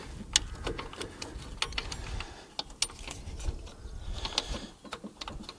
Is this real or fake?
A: real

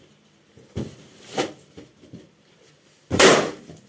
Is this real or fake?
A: real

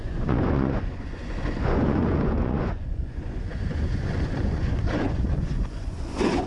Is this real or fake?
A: fake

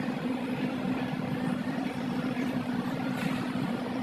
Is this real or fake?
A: fake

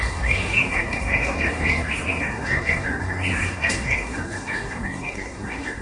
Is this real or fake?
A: fake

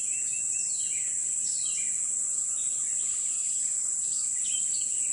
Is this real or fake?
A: real